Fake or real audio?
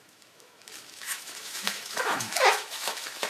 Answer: fake